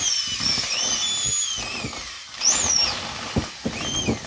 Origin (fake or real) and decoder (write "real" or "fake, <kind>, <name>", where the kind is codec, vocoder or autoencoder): real